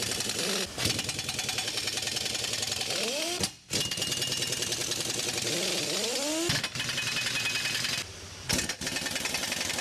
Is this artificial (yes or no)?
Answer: no